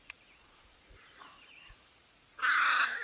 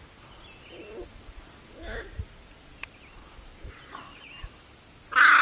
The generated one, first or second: first